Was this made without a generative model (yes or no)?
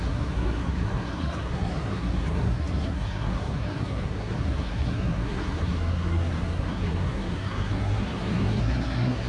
no